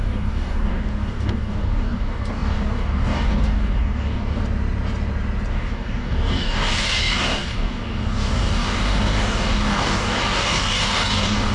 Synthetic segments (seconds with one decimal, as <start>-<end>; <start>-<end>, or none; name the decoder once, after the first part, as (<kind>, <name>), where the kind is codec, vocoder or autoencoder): 0.0-4.4 (codec, DAC); 5.5-11.5